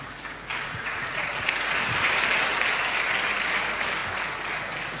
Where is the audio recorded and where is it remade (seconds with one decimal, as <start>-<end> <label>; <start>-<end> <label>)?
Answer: 0.0-0.6 recorded; 0.6-1.3 remade; 1.3-5.0 recorded